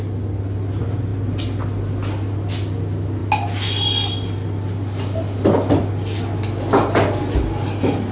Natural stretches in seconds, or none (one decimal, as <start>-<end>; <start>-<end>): 0.0-8.1

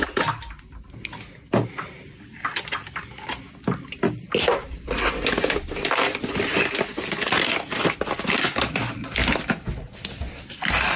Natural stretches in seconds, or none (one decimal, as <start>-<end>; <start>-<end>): 0.0-11.0

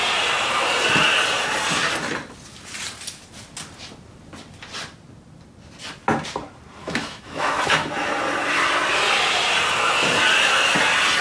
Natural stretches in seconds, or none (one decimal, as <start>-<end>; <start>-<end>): 0.0-6.8; 7.9-11.2

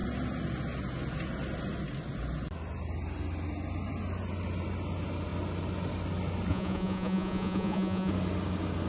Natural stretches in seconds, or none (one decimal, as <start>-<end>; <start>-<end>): 0.0-6.5; 8.1-8.9

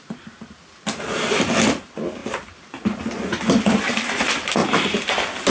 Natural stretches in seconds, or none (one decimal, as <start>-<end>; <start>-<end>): 0.0-5.5

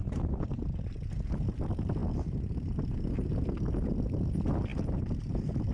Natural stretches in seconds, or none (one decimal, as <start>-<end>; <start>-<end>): 0.8-5.7

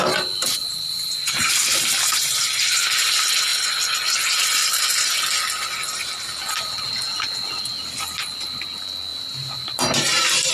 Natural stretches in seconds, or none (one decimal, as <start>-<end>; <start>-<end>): 0.0-0.6; 1.5-9.1

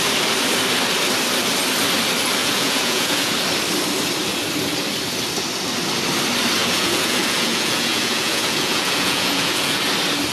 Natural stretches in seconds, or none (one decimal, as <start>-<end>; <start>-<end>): 0.0-2.4; 3.3-6.6; 9.8-10.3